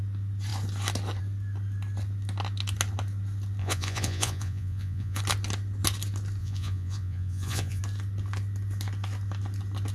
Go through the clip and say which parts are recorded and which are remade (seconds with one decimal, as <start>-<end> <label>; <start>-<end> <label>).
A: 0.0-3.6 recorded; 3.6-5.2 remade; 5.2-6.4 recorded; 6.4-7.8 remade; 7.8-9.9 recorded